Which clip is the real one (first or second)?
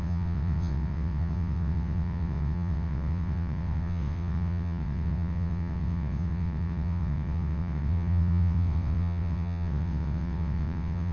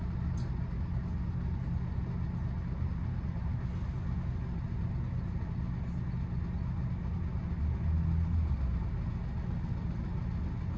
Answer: second